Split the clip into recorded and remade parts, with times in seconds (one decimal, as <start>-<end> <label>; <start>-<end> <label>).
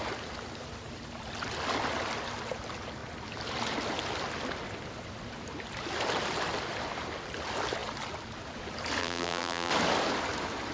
0.0-9.0 recorded; 9.0-9.7 remade; 9.7-10.7 recorded